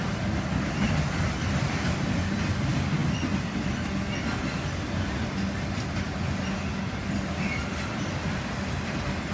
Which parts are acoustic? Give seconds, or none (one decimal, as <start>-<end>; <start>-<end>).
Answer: 0.0-9.3